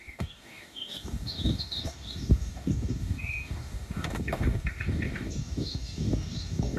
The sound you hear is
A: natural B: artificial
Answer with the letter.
B